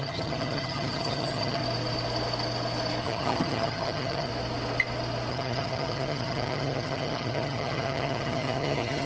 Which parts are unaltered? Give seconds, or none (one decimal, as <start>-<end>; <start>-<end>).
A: 1.6-3.0; 4.3-5.3